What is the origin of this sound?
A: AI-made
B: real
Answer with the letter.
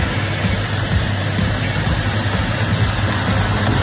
B